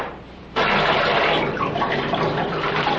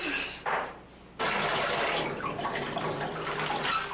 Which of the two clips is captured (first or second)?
second